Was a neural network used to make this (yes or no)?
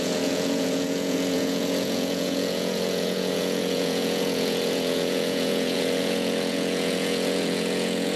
yes